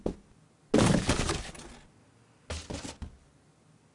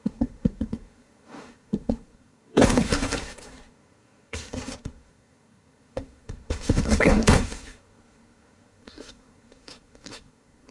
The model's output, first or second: second